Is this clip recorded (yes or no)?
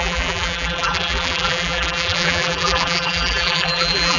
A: no